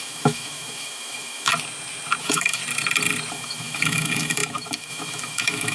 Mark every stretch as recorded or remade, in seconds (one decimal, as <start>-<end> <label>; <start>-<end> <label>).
0.0-1.5 remade; 1.5-2.2 recorded; 2.2-2.6 remade; 2.6-3.3 recorded; 3.3-5.7 remade